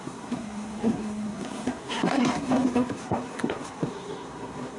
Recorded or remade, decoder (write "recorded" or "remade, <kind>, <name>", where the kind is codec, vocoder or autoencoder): remade, codec, SNAC